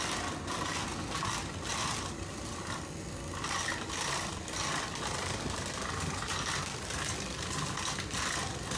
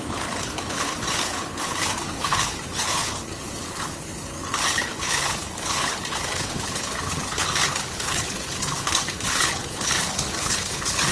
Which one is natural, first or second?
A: first